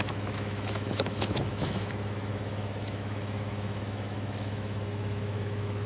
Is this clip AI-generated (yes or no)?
yes